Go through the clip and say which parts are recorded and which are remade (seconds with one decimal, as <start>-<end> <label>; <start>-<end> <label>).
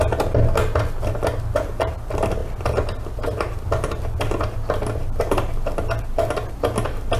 0.0-7.2 recorded